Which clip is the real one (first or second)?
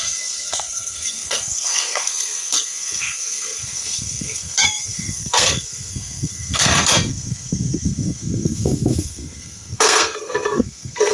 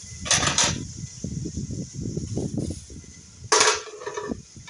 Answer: second